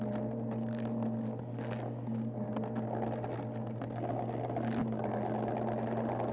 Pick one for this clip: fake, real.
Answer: real